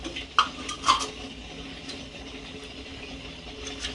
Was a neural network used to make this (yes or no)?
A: no